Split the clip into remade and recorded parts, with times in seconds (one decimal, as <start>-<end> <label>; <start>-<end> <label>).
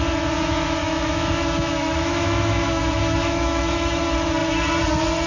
0.0-0.8 recorded; 0.8-4.0 remade; 4.0-5.3 recorded